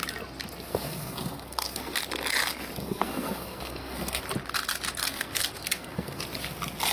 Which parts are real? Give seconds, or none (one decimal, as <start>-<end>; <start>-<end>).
0.0-0.7; 2.0-2.8; 4.2-5.0; 6.2-6.9